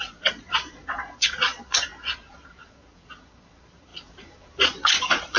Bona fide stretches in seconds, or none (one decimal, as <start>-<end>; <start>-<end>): none